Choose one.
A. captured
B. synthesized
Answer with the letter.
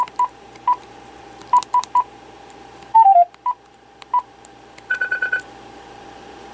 A